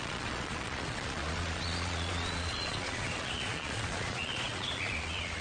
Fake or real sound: fake